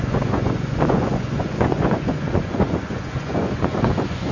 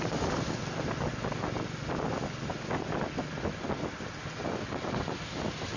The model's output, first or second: first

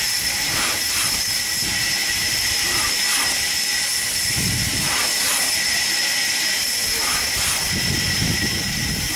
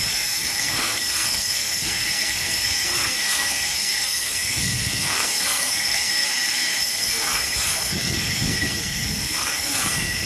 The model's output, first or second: second